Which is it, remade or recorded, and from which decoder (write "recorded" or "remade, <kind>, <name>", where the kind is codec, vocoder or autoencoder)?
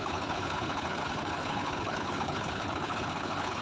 remade, codec, HILCodec